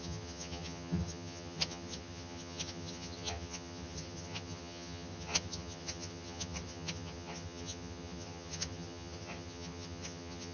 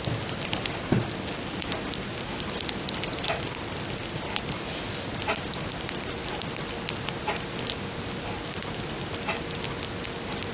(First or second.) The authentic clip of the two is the second